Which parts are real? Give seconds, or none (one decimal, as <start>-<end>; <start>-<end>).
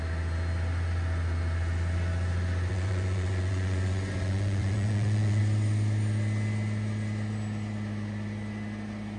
0.0-2.7; 5.4-9.2